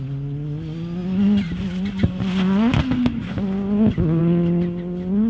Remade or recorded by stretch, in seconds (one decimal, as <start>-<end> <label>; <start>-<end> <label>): 0.0-5.3 recorded